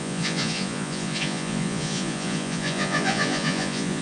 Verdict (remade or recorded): remade